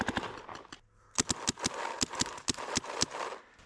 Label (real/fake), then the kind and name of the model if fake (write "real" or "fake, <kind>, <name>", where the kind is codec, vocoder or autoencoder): real